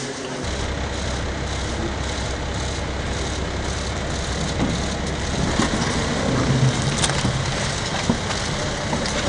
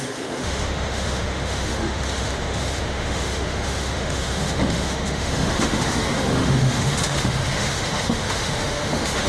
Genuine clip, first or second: first